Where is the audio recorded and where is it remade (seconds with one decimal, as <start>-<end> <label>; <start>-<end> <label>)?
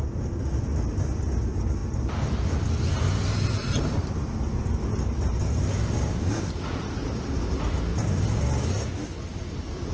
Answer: 0.0-9.9 recorded